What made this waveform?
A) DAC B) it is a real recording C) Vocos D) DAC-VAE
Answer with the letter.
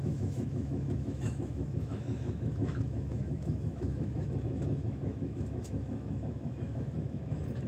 D